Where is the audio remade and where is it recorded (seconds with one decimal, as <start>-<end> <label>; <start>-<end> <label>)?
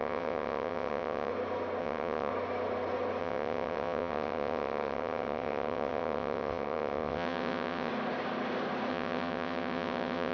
0.0-1.3 remade; 1.3-1.8 recorded; 1.8-2.3 remade; 2.3-3.2 recorded; 3.2-7.9 remade; 7.9-8.9 recorded; 8.9-10.3 remade